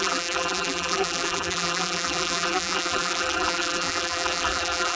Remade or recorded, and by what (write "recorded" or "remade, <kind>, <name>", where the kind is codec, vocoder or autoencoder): remade, vocoder, BigVGAN v2